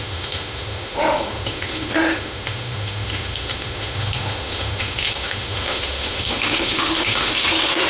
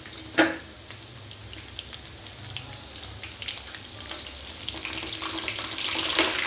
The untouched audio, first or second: second